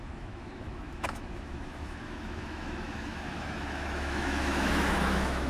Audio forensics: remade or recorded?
remade